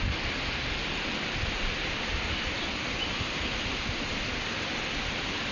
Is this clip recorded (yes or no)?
no